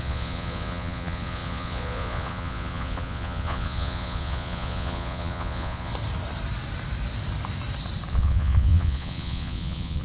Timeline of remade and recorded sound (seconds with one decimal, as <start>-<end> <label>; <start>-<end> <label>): 0.0-5.9 remade; 5.9-8.1 recorded; 8.1-10.0 remade